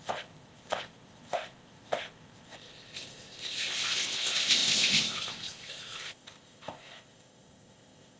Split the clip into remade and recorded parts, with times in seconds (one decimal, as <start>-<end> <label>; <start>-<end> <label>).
0.0-8.2 remade